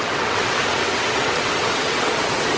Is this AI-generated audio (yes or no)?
yes